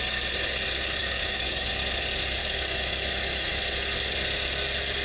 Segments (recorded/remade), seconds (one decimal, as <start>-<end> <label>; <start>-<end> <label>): 0.0-1.0 recorded; 1.0-1.7 remade; 1.7-2.4 recorded; 2.4-3.5 remade; 3.5-5.0 recorded